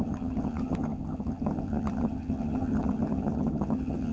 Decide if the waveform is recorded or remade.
remade